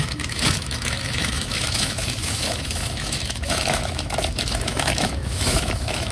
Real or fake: fake